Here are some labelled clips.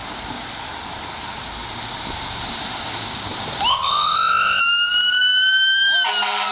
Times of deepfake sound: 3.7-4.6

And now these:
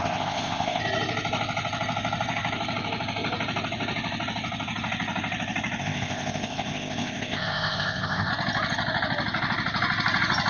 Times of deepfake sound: 0.0-0.8; 5.8-8.3

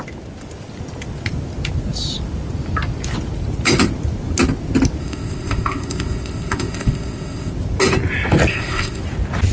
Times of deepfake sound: 5.0-7.5; 8.5-9.0